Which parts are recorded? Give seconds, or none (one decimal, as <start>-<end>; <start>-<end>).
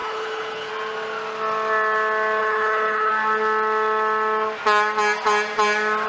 0.7-2.4; 3.1-6.1